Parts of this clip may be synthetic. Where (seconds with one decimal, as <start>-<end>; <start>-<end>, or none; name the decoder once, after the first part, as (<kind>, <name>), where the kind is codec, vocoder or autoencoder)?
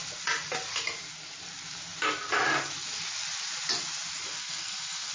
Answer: 4.3-5.1 (codec, SNAC)